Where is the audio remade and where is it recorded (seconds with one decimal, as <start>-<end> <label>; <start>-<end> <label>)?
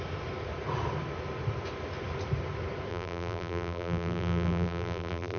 0.0-2.9 recorded; 2.9-5.4 remade